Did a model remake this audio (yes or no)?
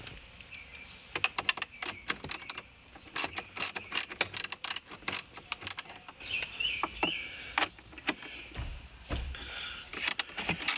no